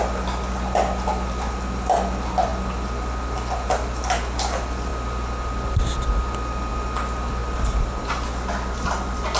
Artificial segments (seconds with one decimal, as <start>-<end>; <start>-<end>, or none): none